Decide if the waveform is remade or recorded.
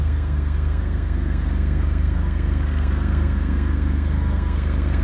remade